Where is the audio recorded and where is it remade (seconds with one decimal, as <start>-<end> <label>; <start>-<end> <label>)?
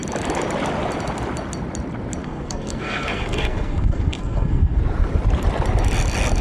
0.0-2.2 recorded; 2.2-4.8 remade; 4.8-6.4 recorded